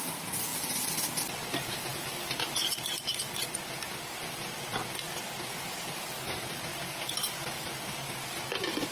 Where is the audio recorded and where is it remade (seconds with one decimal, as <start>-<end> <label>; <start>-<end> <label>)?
0.0-0.5 remade; 0.5-1.3 recorded; 1.3-1.9 remade; 1.9-5.5 recorded; 5.5-8.9 remade